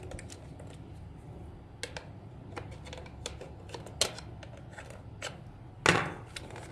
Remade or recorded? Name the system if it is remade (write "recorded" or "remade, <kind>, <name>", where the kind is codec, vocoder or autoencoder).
recorded